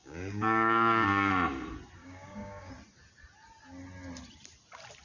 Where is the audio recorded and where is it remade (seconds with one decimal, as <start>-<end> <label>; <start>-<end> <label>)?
0.0-1.3 remade; 1.3-2.0 recorded; 2.0-2.7 remade; 2.7-5.0 recorded

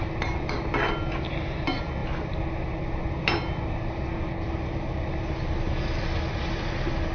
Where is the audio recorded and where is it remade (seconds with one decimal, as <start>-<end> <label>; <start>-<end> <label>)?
0.0-7.1 recorded

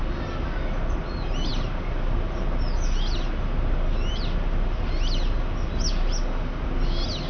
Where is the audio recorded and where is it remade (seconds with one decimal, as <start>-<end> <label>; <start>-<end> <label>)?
0.0-7.3 recorded

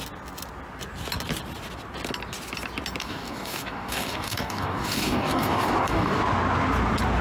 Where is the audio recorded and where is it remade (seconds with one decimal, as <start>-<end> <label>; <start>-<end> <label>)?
0.0-3.0 recorded; 3.0-6.2 remade; 6.2-7.2 recorded

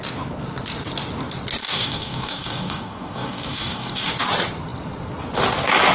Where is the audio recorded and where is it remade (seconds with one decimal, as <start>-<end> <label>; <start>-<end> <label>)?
0.0-1.6 recorded; 1.6-4.1 remade; 4.1-5.9 recorded

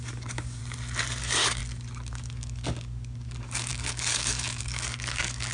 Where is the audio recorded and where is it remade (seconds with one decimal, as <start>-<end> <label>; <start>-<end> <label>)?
0.0-0.6 remade; 0.6-1.2 recorded; 1.2-1.6 remade; 1.6-2.1 recorded; 2.1-5.5 remade

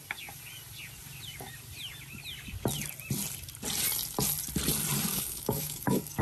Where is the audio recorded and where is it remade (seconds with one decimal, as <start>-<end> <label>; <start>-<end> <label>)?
0.0-5.1 recorded; 5.1-6.2 remade